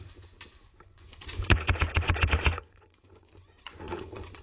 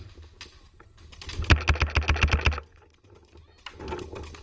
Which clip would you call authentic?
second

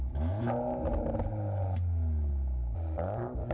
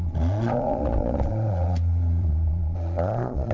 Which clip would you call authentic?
first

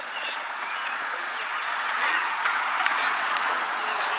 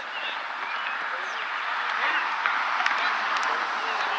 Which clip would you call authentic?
second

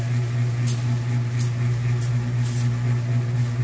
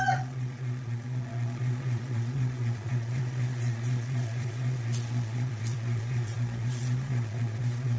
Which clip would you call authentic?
first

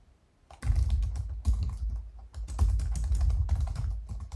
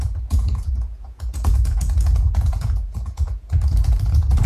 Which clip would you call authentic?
first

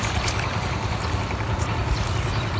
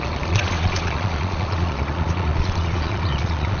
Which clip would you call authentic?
first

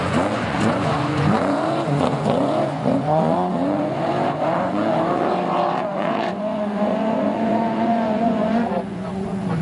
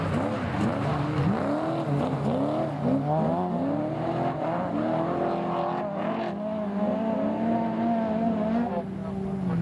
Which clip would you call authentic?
second